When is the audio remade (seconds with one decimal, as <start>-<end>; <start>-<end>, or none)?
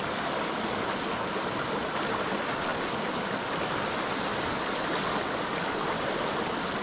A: none